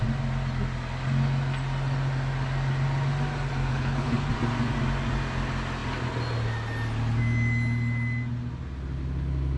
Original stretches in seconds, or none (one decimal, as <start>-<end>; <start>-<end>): 0.0-3.7; 4.3-9.6